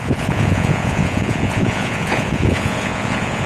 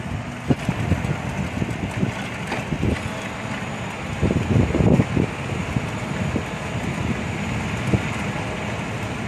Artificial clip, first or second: first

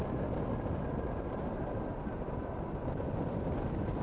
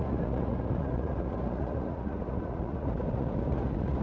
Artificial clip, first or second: second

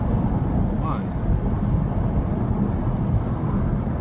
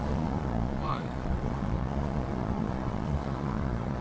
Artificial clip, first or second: second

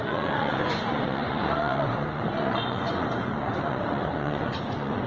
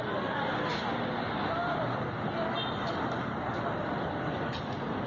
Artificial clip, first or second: first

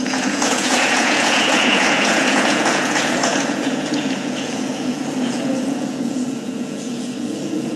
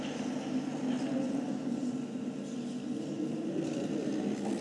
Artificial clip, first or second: first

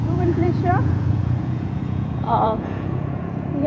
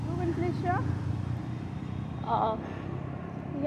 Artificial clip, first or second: first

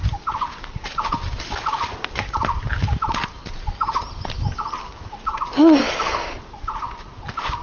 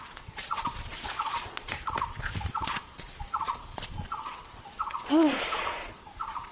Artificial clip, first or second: second